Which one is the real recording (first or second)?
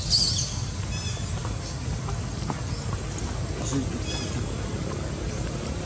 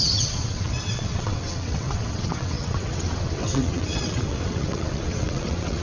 first